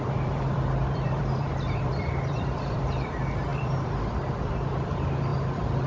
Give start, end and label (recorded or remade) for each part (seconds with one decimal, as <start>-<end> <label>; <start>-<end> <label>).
0.0-5.9 remade